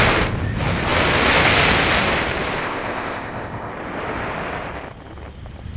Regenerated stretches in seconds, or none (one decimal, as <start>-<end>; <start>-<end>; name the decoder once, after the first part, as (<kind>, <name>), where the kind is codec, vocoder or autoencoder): 2.6-3.7 (codec, ZipCodec)